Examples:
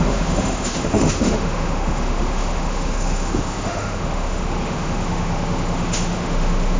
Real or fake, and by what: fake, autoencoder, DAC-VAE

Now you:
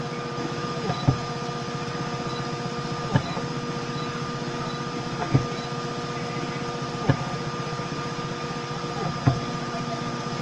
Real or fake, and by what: real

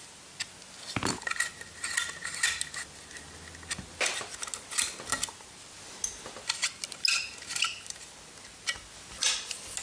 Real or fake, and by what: real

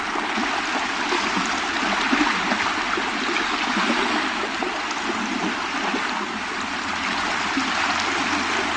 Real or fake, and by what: real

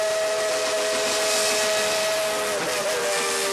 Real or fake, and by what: real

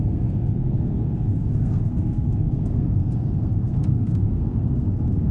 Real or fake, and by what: fake, codec, SNAC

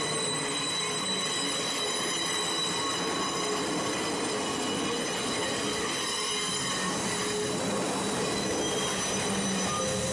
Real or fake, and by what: real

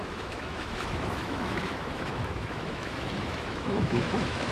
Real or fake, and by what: fake, autoencoder, DAC-VAE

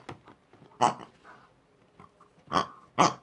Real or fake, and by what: real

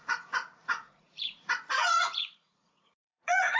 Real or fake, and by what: fake, vocoder, Vocos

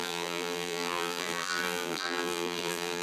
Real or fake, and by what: fake, vocoder, BigVGAN v2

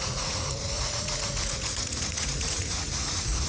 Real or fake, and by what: fake, vocoder, Vocos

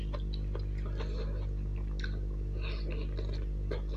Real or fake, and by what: real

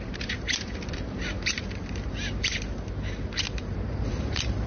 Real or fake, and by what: fake, vocoder, BigVGAN v2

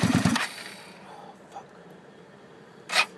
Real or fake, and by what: fake, vocoder, BigVGAN v2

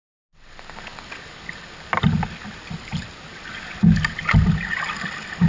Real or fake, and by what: real